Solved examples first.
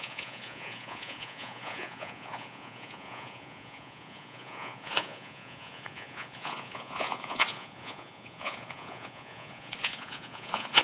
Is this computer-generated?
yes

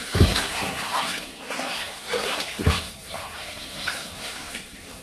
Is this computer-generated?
yes